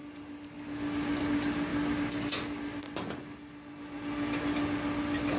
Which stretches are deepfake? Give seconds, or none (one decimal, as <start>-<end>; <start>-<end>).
none